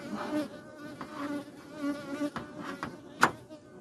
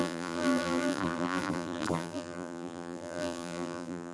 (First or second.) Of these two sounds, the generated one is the second